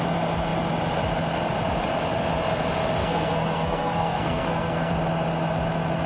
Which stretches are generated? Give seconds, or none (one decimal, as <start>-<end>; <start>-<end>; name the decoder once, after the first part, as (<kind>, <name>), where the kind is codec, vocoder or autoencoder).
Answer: 3.0-4.9 (codec, SNAC)